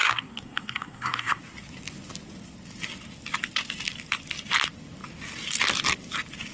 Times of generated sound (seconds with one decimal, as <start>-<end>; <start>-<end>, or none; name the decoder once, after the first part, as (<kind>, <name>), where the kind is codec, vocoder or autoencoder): 0.0-1.4 (codec, SNAC)